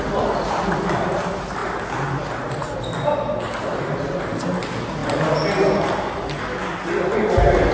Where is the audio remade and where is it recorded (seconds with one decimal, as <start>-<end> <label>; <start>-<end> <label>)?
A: 0.0-7.7 recorded